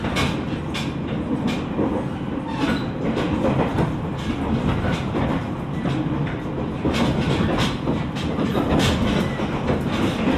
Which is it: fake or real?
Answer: real